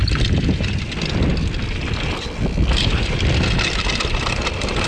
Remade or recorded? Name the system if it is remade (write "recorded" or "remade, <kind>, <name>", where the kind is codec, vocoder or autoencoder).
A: recorded